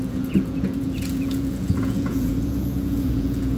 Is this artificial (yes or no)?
yes